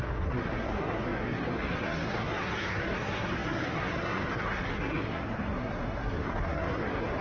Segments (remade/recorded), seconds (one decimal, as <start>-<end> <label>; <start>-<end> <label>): 0.0-7.2 remade